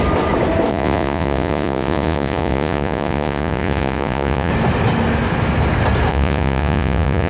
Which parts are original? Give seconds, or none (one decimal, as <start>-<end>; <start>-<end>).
0.0-0.7; 4.5-6.1